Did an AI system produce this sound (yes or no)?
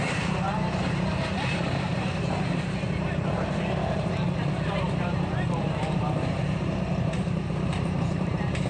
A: yes